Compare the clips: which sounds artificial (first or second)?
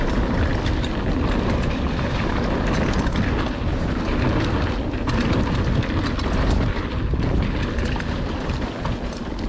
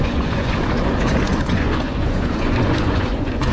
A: second